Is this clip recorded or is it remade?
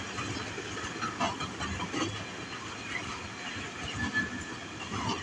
recorded